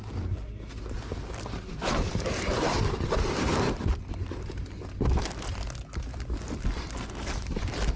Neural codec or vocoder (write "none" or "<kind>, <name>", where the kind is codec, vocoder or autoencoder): none